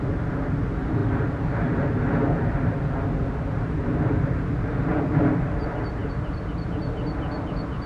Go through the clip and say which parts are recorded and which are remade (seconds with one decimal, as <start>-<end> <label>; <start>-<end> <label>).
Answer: 0.0-6.0 recorded; 6.0-6.7 remade; 6.7-7.9 recorded